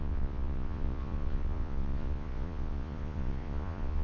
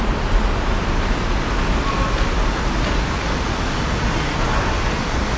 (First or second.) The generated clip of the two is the first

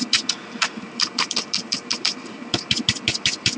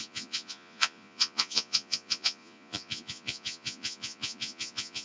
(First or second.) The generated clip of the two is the second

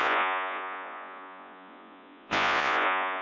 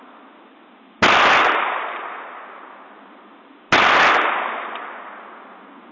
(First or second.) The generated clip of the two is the first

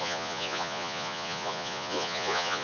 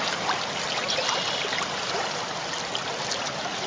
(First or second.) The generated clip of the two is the first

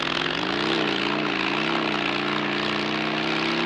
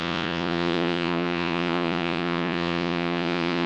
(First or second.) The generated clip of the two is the second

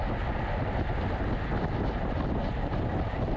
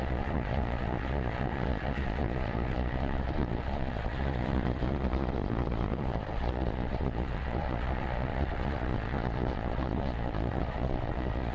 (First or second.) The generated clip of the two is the second